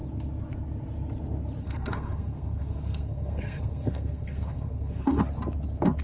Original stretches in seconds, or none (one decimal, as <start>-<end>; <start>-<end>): 0.0-1.6; 5.2-6.0

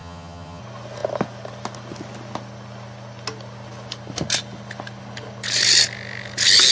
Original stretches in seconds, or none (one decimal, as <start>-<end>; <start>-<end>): 0.6-6.7

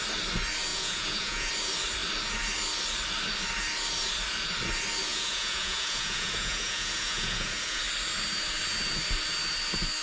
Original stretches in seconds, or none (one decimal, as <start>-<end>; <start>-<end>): 0.0-0.7; 1.5-5.1; 7.8-10.0

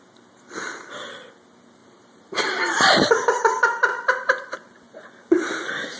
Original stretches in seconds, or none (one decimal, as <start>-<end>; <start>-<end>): 0.0-1.8; 3.1-3.9; 5.1-6.0

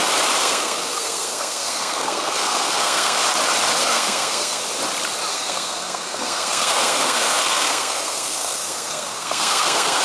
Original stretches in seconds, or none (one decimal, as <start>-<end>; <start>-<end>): 0.0-0.4; 3.2-3.8; 4.6-5.3

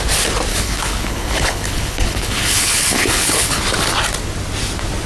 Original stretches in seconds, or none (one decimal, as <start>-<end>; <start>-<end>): 0.0-0.5; 3.6-5.1

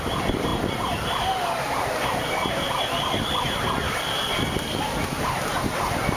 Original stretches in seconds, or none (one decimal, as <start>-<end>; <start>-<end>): 0.5-1.6; 2.4-5.8

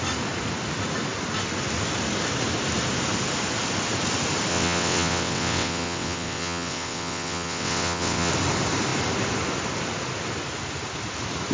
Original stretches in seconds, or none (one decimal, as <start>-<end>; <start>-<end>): 0.0-4.5; 8.3-11.5